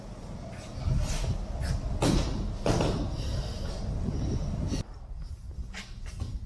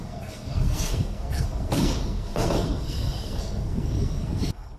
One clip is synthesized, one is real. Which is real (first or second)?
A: first